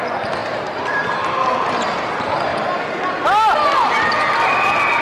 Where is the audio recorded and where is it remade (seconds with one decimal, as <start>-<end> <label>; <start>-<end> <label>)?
0.0-5.0 recorded

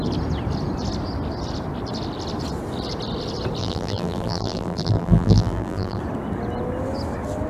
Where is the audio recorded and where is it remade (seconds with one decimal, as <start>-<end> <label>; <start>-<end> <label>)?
0.0-3.6 recorded; 3.6-6.0 remade; 6.0-7.5 recorded

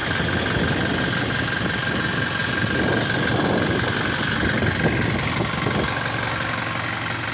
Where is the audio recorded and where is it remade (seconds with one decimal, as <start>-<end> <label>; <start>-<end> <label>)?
0.0-7.3 recorded

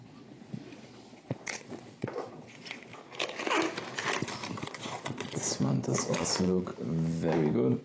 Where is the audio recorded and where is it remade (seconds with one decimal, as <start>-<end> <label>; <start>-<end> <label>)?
0.0-2.9 remade; 2.9-4.6 recorded; 4.6-6.7 remade; 6.7-7.8 recorded

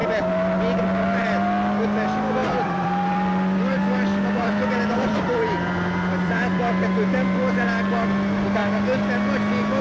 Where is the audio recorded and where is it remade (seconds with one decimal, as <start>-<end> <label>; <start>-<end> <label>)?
0.0-2.4 recorded; 2.4-7.4 remade; 7.4-9.8 recorded